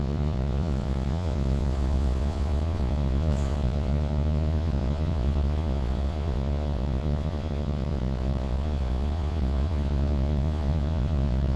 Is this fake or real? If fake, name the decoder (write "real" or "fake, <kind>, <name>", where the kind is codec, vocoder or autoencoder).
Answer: fake, vocoder, Vocos